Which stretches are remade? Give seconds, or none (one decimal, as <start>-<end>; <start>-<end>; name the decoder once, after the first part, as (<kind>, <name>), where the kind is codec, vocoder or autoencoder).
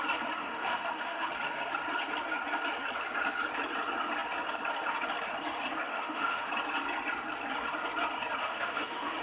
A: 0.4-1.3 (autoencoder, DAC-VAE); 5.9-6.5; 8.4-9.2